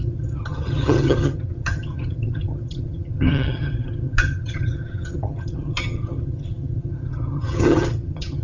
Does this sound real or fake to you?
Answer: fake